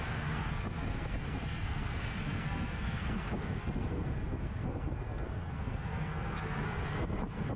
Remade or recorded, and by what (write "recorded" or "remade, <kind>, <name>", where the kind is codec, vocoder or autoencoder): remade, codec, SNAC